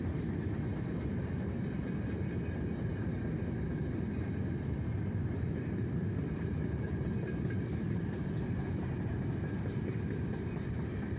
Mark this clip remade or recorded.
remade